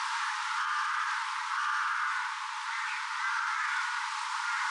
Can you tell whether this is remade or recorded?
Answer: recorded